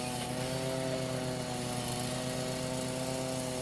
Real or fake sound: real